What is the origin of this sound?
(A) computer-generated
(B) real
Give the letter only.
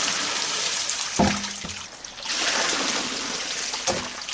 B